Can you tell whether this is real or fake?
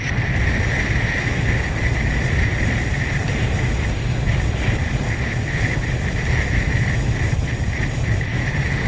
real